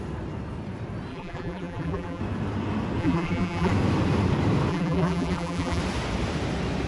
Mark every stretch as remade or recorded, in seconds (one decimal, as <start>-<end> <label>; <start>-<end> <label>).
0.0-1.1 recorded; 1.1-2.2 remade; 2.2-3.0 recorded; 3.0-3.7 remade; 3.7-4.7 recorded; 4.7-5.8 remade; 5.8-6.9 recorded